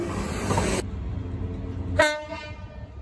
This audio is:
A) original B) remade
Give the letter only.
A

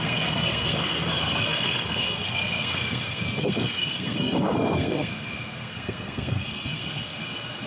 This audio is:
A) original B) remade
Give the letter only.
B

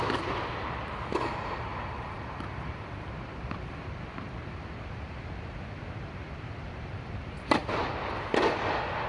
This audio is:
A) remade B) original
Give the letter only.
B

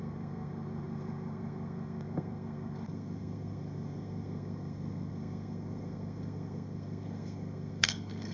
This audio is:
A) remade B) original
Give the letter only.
A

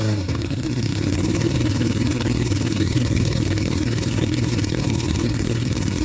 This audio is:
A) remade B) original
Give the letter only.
A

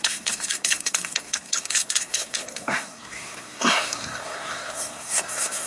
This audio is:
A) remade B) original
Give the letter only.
A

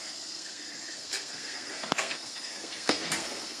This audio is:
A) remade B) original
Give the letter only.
A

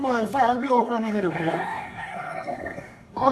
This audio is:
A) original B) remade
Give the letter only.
B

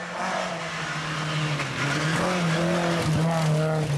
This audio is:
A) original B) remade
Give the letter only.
A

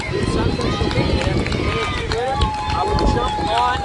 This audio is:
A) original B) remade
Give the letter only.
A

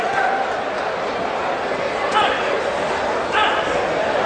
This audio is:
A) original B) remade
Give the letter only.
A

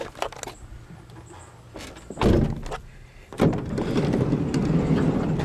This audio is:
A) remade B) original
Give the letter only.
B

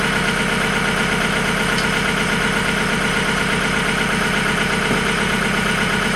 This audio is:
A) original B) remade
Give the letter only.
A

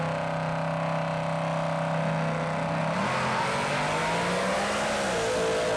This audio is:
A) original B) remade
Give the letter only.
A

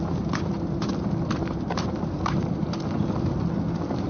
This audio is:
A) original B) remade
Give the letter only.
A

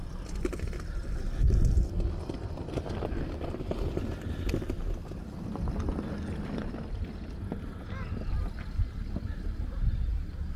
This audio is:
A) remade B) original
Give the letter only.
B